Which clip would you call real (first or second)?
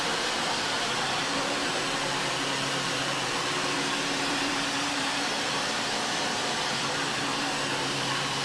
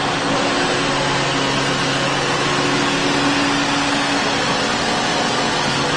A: second